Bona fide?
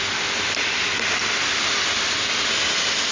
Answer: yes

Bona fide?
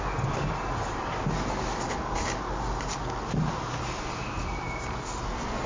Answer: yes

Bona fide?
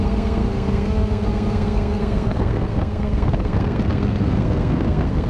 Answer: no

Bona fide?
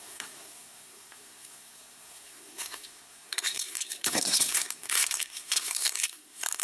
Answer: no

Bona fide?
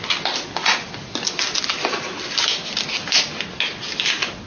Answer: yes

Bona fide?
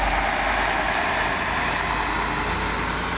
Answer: yes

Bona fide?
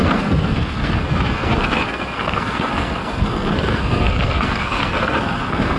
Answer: no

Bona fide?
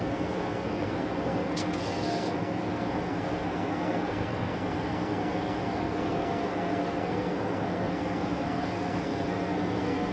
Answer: no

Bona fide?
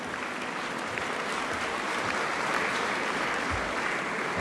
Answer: yes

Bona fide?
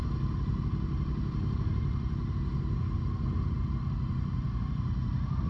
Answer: yes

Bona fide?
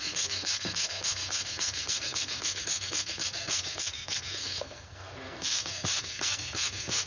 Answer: no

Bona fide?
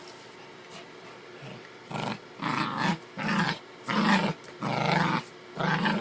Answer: yes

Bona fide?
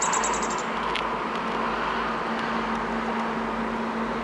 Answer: yes